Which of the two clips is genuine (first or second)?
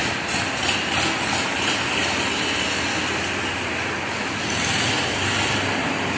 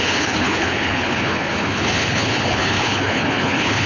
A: first